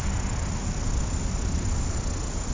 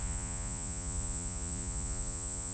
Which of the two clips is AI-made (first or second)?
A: second